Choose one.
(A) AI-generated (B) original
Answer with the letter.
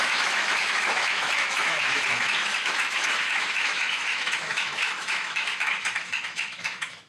A